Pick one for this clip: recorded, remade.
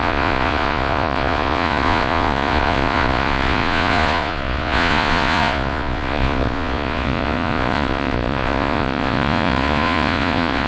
remade